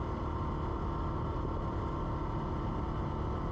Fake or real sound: real